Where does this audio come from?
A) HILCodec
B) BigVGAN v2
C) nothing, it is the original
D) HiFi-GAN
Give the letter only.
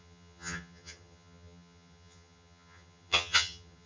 D